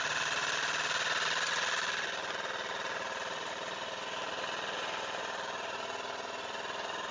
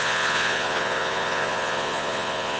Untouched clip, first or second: first